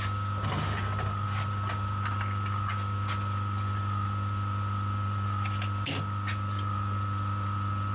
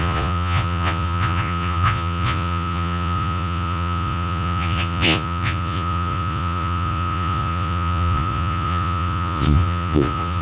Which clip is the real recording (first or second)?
first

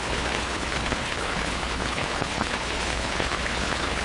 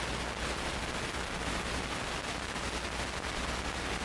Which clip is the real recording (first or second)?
second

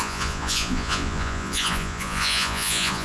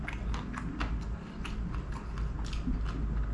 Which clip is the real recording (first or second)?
second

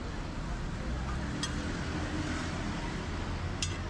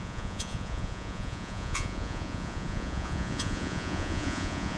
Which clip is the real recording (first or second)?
first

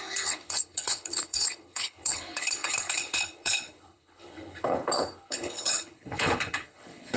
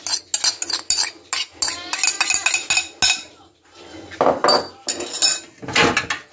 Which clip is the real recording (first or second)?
second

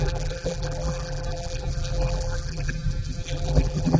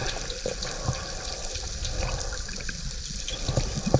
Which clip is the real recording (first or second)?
second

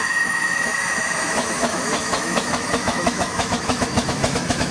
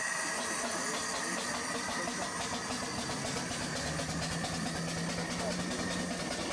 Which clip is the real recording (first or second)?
second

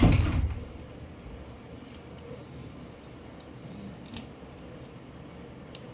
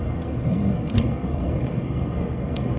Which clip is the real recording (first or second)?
first